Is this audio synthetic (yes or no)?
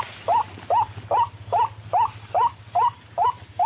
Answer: no